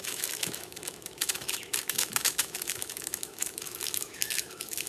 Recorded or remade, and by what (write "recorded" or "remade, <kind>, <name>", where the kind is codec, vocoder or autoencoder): remade, autoencoder, DAC-VAE